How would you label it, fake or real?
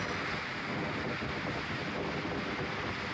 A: real